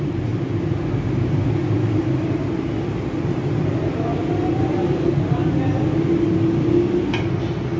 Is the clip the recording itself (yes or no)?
yes